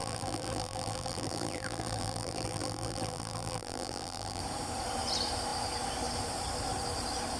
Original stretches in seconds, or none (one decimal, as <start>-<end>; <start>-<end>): 4.4-7.4